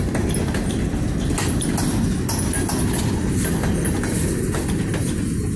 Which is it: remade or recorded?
recorded